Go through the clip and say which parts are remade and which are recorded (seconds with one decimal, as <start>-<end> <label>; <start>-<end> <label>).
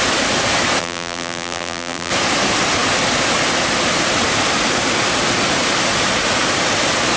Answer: 0.0-0.8 recorded; 0.8-2.1 remade; 2.1-7.2 recorded